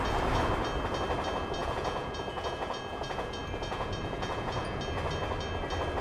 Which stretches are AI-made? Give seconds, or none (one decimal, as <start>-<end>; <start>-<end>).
1.6-4.8